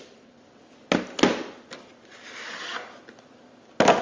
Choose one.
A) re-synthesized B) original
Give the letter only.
B